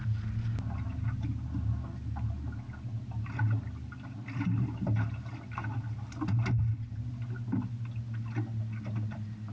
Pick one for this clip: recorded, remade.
recorded